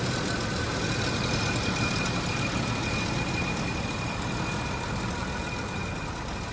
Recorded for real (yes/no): yes